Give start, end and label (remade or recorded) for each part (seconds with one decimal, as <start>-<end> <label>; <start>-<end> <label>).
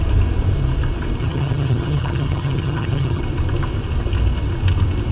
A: 0.0-1.2 recorded; 1.2-3.2 remade; 3.2-5.1 recorded